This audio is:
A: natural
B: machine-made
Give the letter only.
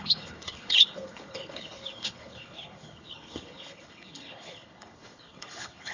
B